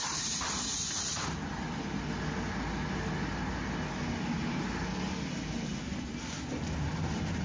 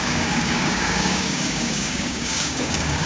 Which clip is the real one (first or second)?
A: first